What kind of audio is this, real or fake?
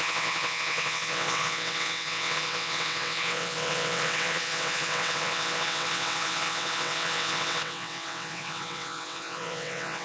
fake